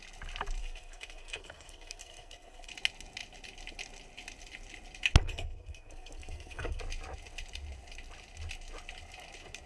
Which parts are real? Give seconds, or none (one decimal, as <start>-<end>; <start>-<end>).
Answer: 0.0-0.6; 2.7-5.2; 6.8-9.7